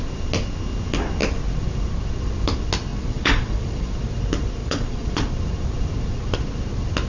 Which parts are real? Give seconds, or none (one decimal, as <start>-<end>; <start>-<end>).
0.0-2.9; 3.9-4.6; 5.3-7.1